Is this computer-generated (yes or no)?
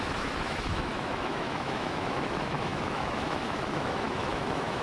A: yes